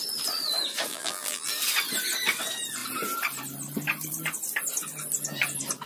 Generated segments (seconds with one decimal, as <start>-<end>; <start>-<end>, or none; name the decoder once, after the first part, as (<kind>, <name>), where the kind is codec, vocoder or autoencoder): 0.9-1.5 (vocoder, BigVGAN v2)